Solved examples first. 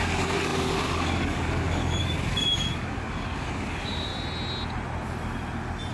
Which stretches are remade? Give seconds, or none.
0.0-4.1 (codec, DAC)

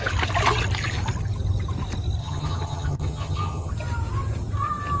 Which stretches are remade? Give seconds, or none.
2.2-3.7 (vocoder, HiFi-GAN)